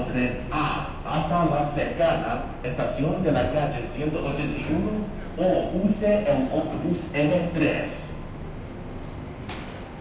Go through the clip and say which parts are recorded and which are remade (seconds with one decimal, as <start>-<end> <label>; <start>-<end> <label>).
0.0-6.7 recorded; 6.7-7.3 remade; 7.3-10.0 recorded